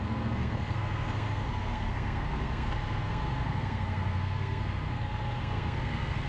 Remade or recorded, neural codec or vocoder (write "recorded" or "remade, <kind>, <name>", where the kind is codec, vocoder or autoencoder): remade, codec, SNAC